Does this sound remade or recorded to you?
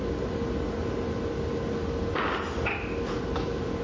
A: recorded